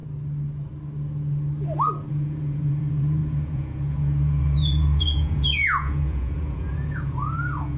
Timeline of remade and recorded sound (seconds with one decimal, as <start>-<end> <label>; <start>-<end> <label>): 0.0-2.1 recorded; 2.1-7.8 remade